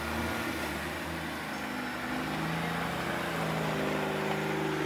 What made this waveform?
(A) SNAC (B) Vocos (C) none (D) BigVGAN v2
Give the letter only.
C